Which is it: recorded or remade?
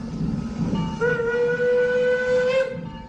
recorded